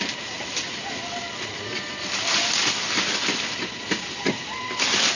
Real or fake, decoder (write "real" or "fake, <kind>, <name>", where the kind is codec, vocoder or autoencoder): real